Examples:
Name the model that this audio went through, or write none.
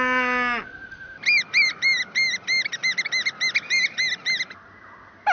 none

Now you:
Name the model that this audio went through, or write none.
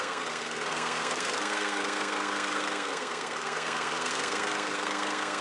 codec, SNAC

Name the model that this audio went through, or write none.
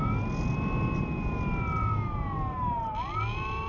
none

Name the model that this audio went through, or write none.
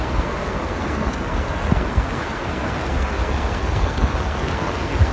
codec, SNAC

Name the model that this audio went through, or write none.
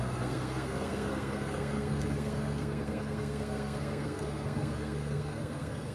codec, SNAC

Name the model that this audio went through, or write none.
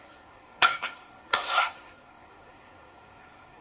codec, SNAC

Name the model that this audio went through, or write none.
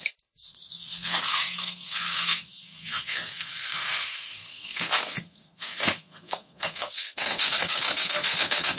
codec, SNAC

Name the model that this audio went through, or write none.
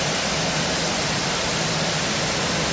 none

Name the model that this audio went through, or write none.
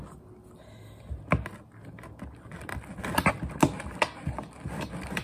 none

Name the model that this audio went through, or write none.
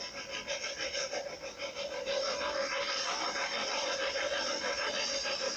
none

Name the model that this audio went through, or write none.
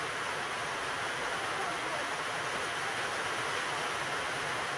none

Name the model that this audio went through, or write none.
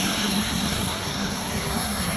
codec, SNAC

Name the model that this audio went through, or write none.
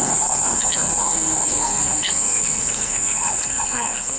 codec, SNAC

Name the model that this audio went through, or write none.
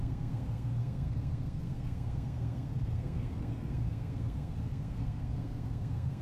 codec, SNAC